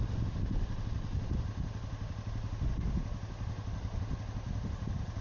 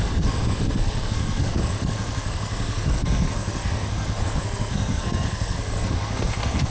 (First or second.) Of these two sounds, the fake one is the second